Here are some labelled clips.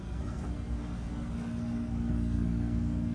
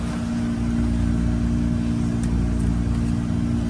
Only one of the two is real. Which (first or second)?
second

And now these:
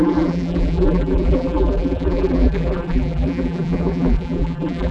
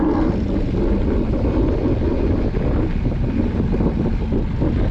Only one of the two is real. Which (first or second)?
second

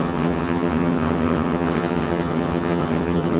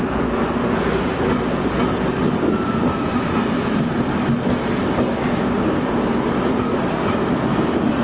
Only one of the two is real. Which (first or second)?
second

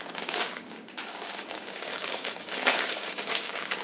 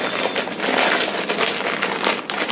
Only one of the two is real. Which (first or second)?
second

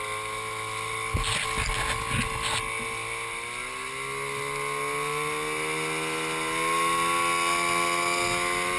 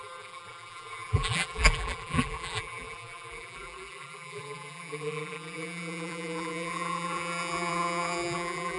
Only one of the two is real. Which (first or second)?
first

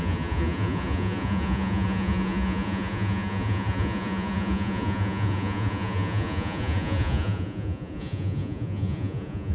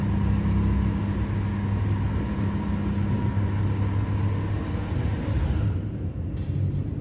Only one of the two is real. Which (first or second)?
second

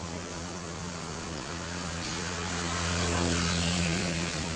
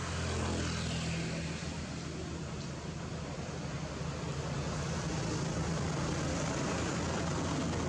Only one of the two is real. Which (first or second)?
second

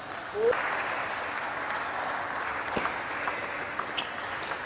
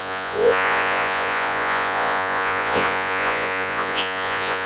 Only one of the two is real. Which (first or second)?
first